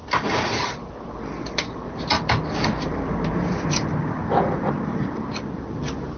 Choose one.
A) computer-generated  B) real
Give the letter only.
B